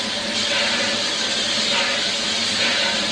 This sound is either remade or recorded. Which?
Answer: recorded